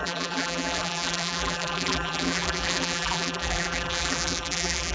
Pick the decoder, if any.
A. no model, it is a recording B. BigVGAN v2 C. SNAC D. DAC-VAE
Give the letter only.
B